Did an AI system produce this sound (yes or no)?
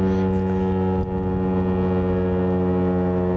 no